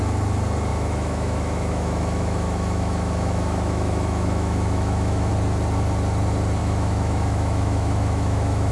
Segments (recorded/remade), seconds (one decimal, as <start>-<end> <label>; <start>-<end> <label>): 0.0-0.7 recorded; 0.7-5.3 remade; 5.3-6.6 recorded; 6.6-8.7 remade